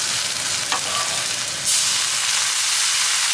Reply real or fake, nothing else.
real